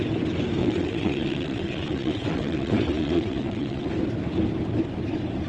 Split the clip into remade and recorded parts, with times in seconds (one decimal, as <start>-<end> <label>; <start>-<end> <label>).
0.0-0.6 recorded; 0.6-3.9 remade; 3.9-5.5 recorded